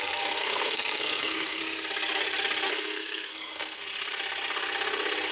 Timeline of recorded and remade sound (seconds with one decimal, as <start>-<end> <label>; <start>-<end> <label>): 0.0-1.6 remade; 1.6-2.7 recorded; 2.7-3.8 remade; 3.8-5.3 recorded